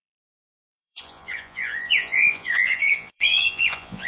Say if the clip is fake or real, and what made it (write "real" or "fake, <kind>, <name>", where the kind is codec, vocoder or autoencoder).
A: fake, vocoder, Vocos